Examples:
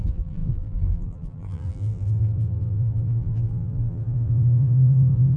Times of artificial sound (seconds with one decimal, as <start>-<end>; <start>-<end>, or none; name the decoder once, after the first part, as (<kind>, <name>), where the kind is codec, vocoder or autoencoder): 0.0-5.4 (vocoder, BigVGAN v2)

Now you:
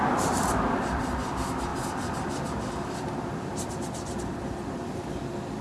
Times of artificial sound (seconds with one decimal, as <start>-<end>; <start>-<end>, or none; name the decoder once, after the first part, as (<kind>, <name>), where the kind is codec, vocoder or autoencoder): 0.0-5.6 (vocoder, BigVGAN v2)

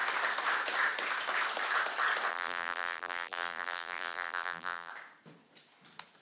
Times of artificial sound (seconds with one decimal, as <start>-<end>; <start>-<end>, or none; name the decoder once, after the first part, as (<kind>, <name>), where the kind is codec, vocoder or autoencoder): 2.3-4.9 (vocoder, BigVGAN v2)